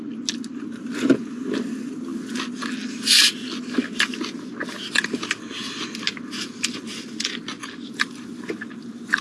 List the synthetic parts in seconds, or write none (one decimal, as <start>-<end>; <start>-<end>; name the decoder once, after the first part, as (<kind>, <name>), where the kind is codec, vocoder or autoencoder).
none

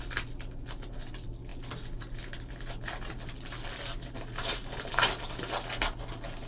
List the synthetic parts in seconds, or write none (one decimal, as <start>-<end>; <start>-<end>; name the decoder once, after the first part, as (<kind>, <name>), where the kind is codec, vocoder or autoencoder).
none

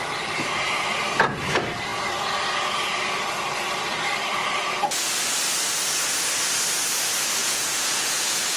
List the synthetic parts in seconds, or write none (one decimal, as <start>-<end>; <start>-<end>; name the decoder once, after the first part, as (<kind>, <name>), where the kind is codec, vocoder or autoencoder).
7.4-8.6 (vocoder, Vocos)

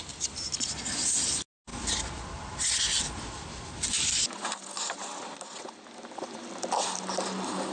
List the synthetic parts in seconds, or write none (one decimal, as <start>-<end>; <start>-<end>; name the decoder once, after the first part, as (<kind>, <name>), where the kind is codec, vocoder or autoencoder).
none

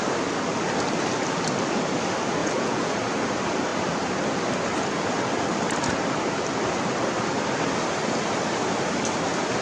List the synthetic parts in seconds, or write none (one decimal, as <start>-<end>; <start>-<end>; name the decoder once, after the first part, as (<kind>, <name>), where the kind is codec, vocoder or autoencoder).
2.4-2.9 (vocoder, Vocos)

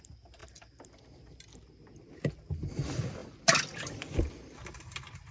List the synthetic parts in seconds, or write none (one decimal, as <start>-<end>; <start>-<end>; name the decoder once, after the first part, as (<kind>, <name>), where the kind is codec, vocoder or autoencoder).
none

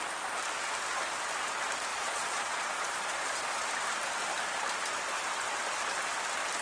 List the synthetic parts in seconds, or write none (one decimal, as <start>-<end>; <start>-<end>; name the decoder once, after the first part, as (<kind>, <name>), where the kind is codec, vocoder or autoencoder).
1.9-3.6 (vocoder, Vocos)